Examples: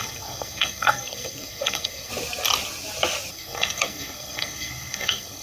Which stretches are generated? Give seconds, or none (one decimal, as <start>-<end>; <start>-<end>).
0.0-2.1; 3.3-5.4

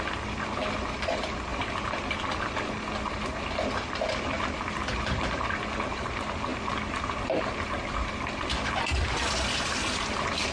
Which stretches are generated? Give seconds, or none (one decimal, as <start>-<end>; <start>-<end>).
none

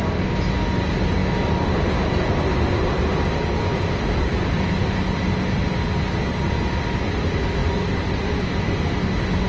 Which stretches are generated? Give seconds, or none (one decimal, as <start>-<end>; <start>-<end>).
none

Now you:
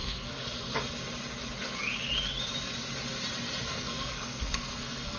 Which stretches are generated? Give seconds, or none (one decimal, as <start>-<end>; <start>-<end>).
0.0-0.9; 3.7-5.2

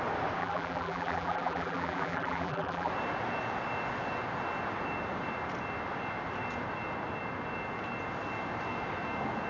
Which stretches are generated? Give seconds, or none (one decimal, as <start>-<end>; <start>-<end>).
0.4-2.9

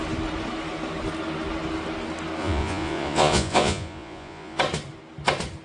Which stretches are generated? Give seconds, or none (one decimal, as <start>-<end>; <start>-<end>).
2.4-4.6